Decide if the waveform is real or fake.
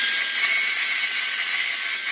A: real